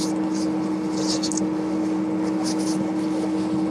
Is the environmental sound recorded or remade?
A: recorded